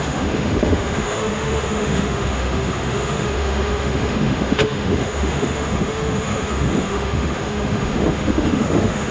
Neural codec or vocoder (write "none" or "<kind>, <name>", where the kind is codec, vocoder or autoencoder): autoencoder, DAC-VAE